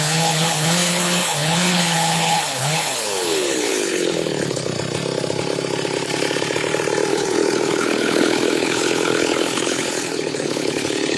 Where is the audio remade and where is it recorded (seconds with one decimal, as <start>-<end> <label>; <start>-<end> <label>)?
0.0-4.7 remade; 4.7-7.1 recorded; 7.1-11.2 remade